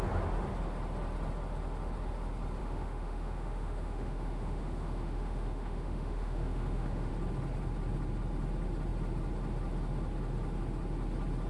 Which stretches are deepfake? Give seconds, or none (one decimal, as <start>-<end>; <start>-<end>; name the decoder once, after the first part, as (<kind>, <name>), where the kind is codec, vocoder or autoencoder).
2.6-7.1 (autoencoder, DAC-VAE)